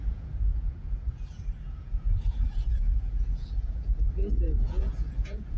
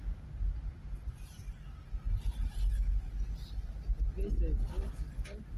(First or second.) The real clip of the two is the second